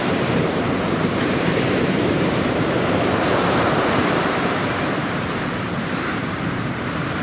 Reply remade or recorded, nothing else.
remade